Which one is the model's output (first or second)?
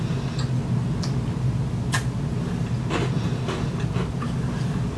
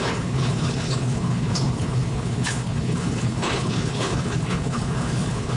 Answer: second